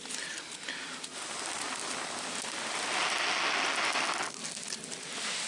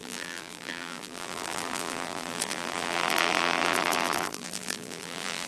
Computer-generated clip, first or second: second